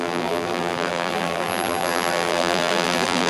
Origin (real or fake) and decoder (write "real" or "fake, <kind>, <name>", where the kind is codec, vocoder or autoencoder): fake, vocoder, BigVGAN v2